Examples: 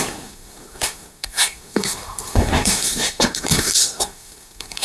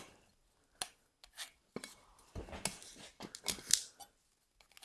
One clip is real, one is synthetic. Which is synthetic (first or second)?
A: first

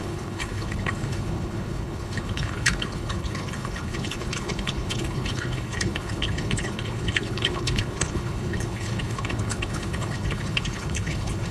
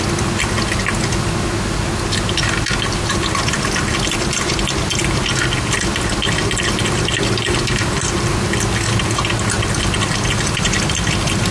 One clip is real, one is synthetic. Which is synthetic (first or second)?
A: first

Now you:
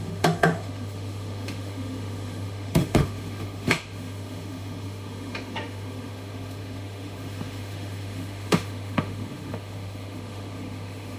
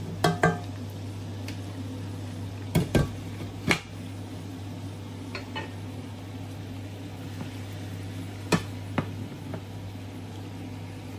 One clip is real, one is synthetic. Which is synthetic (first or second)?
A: first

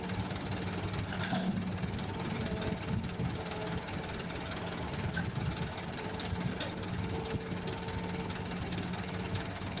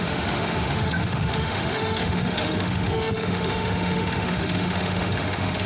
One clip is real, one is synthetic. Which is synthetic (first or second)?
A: second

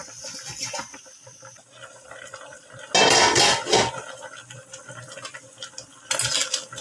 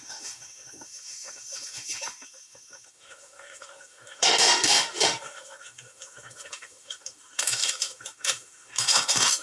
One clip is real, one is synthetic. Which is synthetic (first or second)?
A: second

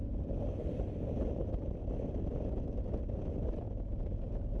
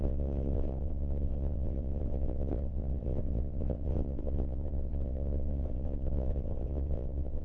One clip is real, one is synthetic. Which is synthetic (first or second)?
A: second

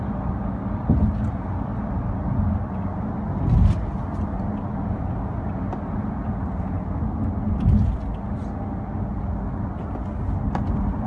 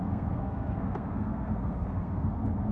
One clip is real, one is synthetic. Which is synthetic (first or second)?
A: second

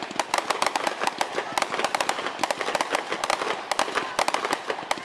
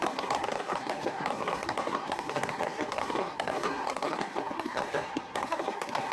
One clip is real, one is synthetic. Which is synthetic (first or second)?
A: second